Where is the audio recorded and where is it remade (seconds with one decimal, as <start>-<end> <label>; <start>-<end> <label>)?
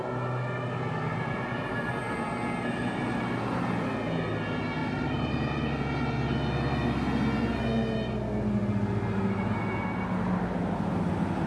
0.0-1.1 recorded; 1.1-1.7 remade; 1.7-4.8 recorded; 4.8-5.8 remade; 5.8-11.5 recorded